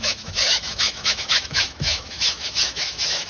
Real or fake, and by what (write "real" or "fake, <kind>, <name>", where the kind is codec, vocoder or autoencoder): fake, autoencoder, DAC-VAE